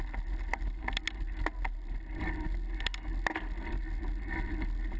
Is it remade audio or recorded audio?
recorded